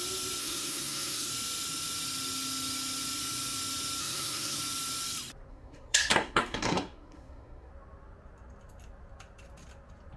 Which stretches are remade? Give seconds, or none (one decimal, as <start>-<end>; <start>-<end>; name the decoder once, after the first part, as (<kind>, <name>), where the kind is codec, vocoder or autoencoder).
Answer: 0.4-1.3 (codec, SNAC); 4.0-4.6; 5.5-7.7